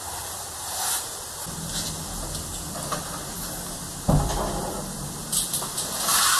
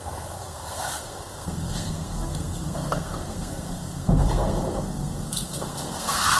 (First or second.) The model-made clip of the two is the second